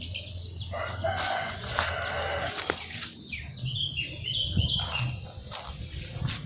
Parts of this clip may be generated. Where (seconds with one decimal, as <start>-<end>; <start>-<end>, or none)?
1.0-1.7